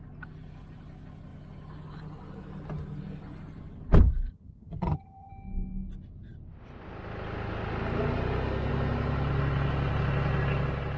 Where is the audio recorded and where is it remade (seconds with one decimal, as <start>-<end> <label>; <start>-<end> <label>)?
0.0-4.3 recorded; 4.3-5.3 remade; 5.3-11.0 recorded